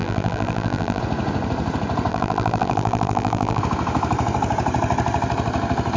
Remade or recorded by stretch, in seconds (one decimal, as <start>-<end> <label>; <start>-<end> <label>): 0.0-1.0 remade; 1.0-2.1 recorded; 2.1-3.6 remade; 3.6-6.0 recorded